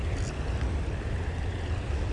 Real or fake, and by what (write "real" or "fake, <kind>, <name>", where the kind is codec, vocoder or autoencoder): real